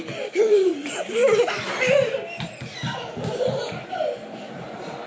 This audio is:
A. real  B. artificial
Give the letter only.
B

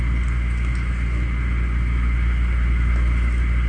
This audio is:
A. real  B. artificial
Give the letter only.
A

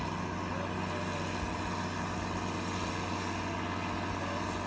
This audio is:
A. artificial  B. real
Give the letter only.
B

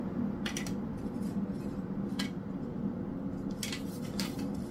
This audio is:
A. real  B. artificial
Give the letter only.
A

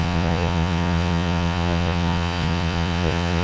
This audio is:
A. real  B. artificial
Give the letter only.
B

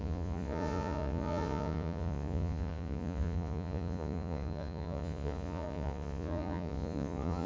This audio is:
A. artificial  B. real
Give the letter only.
A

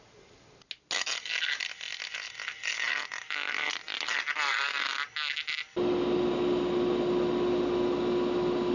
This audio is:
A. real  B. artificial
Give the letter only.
A